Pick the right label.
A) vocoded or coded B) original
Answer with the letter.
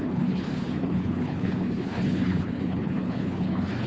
A